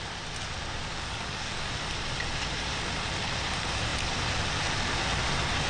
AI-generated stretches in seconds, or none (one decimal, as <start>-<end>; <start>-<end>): 0.9-1.7

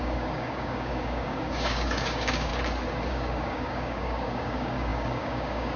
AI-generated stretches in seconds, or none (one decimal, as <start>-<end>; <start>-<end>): 0.0-2.5; 3.1-5.8

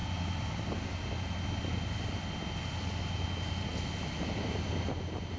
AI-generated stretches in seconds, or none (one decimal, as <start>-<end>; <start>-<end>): none

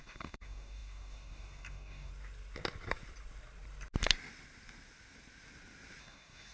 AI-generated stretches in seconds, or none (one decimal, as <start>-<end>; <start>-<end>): 0.0-2.1; 6.0-6.5

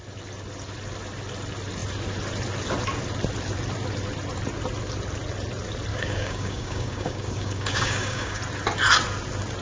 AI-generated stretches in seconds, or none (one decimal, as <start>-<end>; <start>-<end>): 5.9-8.4

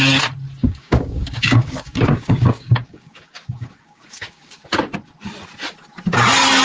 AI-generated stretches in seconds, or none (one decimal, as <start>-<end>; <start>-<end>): 0.6-4.6

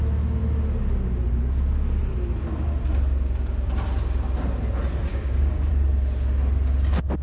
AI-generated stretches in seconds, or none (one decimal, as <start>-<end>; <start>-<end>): 5.1-5.7

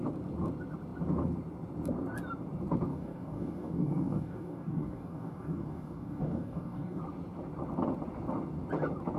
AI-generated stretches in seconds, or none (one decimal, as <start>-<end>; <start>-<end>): 2.9-7.0